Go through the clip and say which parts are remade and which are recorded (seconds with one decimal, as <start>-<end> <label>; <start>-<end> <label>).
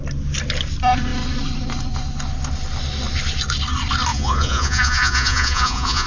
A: 0.0-4.1 recorded; 4.1-6.1 remade